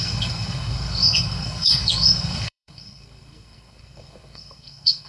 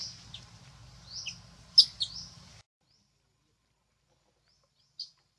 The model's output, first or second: first